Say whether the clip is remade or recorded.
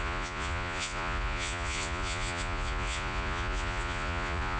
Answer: remade